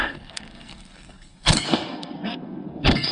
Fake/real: fake